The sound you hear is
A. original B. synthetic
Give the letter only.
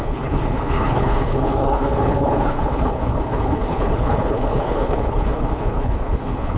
B